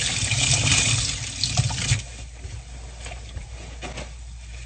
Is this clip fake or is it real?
real